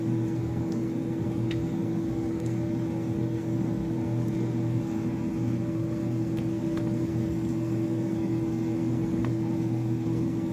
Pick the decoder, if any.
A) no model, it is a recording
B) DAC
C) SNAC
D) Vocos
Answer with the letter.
C